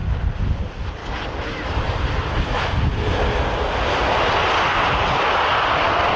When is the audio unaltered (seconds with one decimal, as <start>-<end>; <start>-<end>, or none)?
0.0-6.2